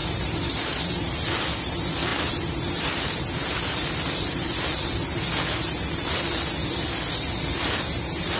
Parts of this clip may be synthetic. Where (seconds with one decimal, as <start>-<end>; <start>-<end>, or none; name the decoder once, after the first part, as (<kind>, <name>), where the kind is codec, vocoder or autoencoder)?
2.1-3.2 (vocoder, BigVGAN v2)

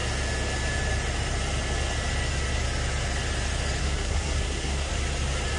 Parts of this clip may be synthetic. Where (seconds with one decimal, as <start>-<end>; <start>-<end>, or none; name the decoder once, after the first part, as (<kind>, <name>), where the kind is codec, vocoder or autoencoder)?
3.8-4.9 (codec, SNAC)

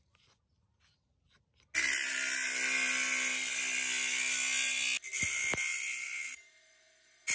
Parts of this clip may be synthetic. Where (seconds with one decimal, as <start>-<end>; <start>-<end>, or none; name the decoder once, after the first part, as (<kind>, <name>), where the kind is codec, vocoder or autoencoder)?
none

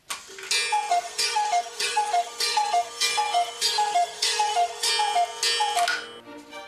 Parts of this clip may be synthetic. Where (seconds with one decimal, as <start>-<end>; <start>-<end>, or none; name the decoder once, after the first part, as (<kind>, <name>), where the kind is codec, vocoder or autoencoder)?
0.9-4.9 (codec, SNAC)

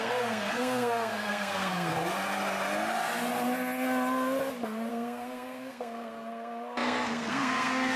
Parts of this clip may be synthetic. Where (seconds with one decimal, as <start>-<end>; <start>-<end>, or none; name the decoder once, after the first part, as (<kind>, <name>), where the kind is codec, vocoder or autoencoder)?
0.0-1.9 (codec, SNAC); 4.9-8.0